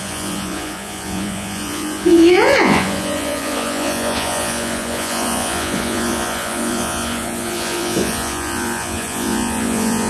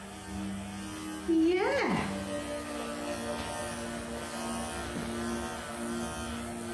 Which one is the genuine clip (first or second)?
second